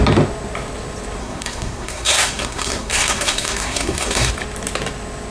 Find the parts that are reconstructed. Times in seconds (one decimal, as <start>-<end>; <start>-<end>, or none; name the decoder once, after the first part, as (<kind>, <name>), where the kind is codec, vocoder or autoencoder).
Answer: 1.2-4.3 (codec, SNAC)